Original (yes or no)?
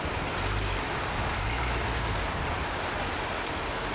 yes